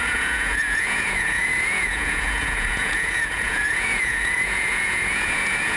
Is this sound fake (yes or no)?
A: yes